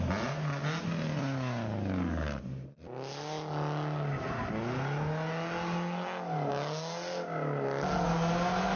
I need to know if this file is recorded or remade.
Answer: recorded